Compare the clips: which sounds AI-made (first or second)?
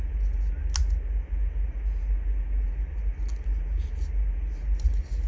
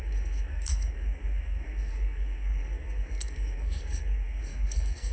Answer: second